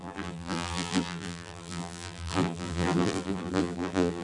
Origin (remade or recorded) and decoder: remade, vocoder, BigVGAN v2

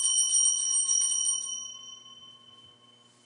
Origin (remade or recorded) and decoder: recorded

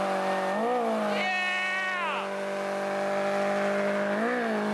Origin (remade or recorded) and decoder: recorded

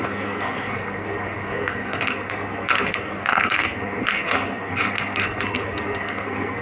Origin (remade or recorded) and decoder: remade, codec, SNAC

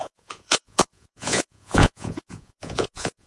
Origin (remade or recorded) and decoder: remade, vocoder, Vocos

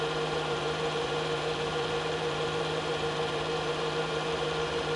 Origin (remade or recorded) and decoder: remade, vocoder, BigVGAN v2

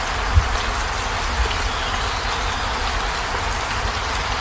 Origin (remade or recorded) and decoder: recorded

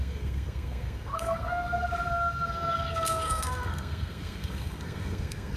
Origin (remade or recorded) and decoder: remade, codec, SNAC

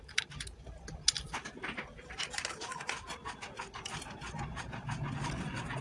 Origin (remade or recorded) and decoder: remade, vocoder, BigVGAN v2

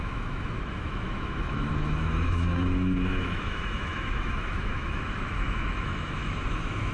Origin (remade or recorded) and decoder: remade, autoencoder, DAC-VAE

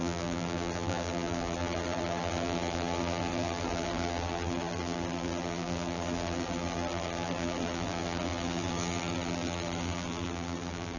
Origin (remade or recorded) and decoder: remade, vocoder, BigVGAN v2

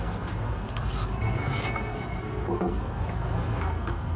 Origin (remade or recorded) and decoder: remade, codec, SNAC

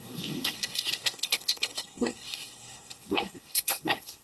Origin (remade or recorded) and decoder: remade, codec, SNAC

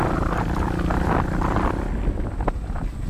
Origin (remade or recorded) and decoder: recorded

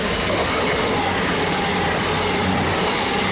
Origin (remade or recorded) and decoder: remade, vocoder, BigVGAN v2